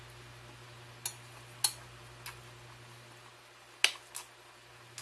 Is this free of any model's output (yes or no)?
yes